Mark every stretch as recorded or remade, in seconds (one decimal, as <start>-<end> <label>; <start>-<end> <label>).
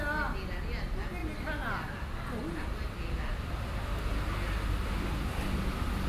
0.0-6.1 recorded